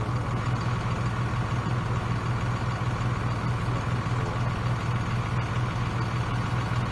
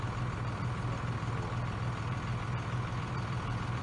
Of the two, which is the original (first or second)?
first